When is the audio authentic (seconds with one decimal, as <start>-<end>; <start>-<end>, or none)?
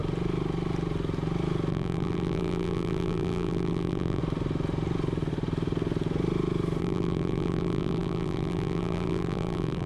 0.0-1.7; 4.2-6.8